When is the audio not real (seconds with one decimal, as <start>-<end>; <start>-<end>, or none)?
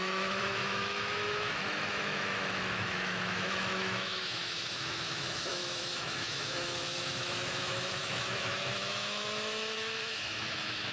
0.0-10.9